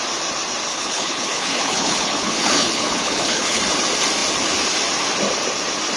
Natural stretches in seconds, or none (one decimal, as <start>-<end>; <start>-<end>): 0.0-0.7; 3.6-6.0